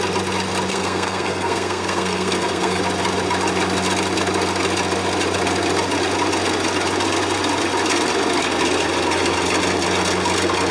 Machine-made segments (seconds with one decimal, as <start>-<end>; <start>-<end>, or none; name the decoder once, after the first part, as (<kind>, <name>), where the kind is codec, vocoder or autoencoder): 0.7-2.8 (codec, SNAC)